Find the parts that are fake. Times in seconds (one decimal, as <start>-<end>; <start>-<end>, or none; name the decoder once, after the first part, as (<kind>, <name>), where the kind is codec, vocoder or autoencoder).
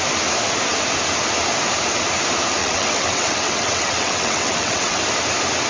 2.6-5.0 (vocoder, WaveNeXt)